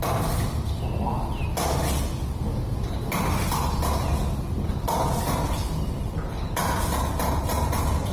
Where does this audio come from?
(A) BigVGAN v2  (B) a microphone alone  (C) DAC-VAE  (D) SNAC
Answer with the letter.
B